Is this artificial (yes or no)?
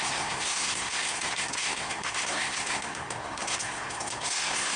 yes